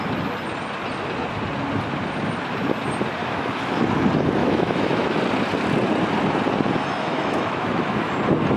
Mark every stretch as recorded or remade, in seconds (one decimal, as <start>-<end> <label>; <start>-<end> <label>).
0.0-3.2 recorded; 3.2-3.8 remade; 3.8-4.4 recorded; 4.4-5.2 remade; 5.2-6.8 recorded; 6.8-8.1 remade; 8.1-8.6 recorded